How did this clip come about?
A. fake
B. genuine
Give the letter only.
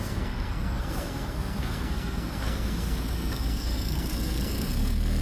A